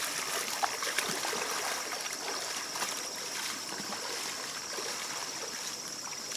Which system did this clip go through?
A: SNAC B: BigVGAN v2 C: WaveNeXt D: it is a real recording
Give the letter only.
B